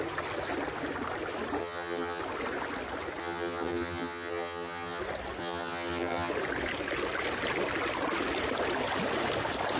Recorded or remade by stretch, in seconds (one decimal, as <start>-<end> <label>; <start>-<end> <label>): 0.0-1.6 recorded; 1.6-2.2 remade; 2.2-3.2 recorded; 3.2-5.0 remade; 5.0-5.4 recorded; 5.4-6.3 remade; 6.3-9.8 recorded

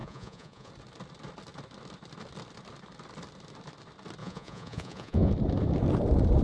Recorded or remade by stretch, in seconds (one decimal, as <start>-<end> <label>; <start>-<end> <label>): 0.0-0.7 remade; 0.7-4.2 recorded; 4.2-5.3 remade; 5.3-6.4 recorded